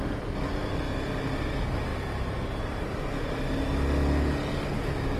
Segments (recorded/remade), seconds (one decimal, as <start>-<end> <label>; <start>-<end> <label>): 0.0-5.2 recorded

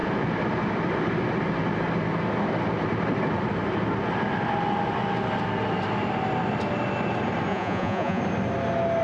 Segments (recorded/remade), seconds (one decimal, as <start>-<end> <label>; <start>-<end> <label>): 0.0-7.5 recorded; 7.5-8.2 remade; 8.2-9.0 recorded

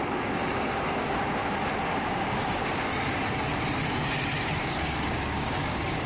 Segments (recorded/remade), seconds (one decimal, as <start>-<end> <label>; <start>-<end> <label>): 0.0-1.4 remade; 1.4-1.9 recorded; 1.9-2.9 remade; 2.9-4.6 recorded; 4.6-6.1 remade

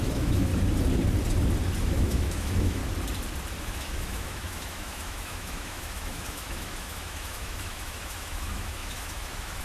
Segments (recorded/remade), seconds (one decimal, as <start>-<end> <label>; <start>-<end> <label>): 0.0-0.5 remade; 0.5-1.8 recorded; 1.8-2.8 remade; 2.8-3.6 recorded; 3.6-9.6 remade

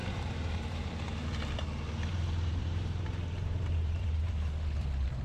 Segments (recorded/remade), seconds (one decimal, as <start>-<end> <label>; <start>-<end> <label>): 0.0-1.5 remade; 1.5-2.1 recorded; 2.1-4.5 remade; 4.5-5.2 recorded

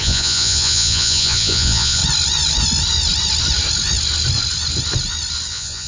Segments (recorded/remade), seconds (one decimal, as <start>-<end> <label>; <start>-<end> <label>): 0.0-2.0 remade; 2.0-5.5 recorded; 5.5-5.9 remade